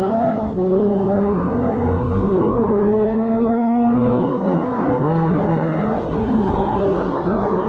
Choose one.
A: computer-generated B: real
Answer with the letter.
A